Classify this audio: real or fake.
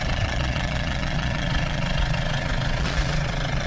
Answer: fake